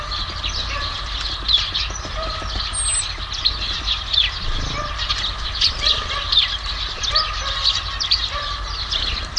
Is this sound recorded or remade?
recorded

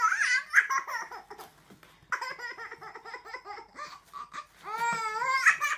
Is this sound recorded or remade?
recorded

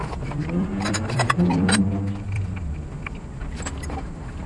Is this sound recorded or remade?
remade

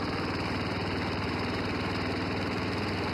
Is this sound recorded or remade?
remade